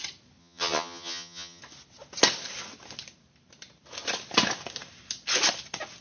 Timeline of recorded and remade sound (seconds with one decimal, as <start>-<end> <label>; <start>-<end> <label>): 0.0-0.4 recorded; 0.4-1.6 remade; 1.6-6.0 recorded